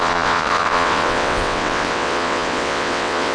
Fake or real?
fake